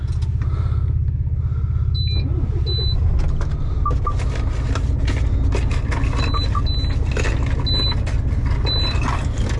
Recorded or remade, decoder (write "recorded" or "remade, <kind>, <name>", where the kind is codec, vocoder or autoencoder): recorded